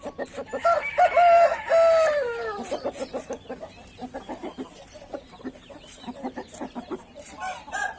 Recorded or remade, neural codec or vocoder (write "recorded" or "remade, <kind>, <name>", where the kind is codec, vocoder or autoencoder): recorded